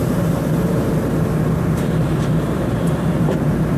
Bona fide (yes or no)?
no